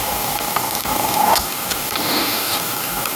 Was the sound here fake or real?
fake